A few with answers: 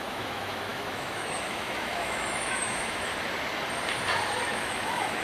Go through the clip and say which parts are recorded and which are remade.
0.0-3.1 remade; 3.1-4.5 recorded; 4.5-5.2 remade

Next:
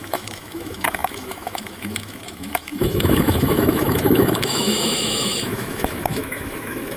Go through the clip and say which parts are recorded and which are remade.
0.0-7.0 remade